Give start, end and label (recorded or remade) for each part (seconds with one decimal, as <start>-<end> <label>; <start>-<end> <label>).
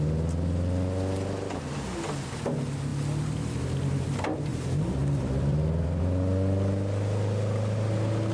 0.0-4.5 recorded; 4.5-6.0 remade; 6.0-8.3 recorded